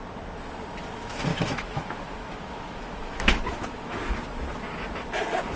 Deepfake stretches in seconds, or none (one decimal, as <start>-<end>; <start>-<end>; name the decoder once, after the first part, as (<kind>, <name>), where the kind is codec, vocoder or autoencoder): 1.3-4.0 (autoencoder, DAC-VAE)